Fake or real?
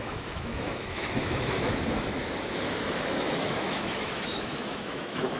fake